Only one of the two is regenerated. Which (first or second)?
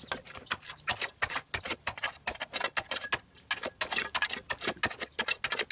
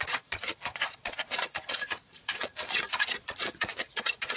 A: second